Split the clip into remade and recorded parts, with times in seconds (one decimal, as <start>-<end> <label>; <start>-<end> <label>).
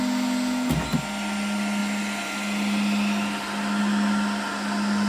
0.0-5.1 recorded